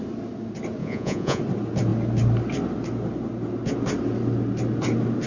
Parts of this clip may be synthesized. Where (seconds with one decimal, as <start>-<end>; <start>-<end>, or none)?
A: 0.8-1.4